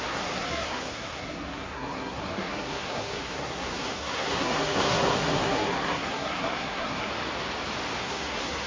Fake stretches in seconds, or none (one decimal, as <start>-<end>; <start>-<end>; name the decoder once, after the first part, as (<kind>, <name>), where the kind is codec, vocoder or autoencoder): 0.0-7.1 (codec, SNAC); 8.0-8.7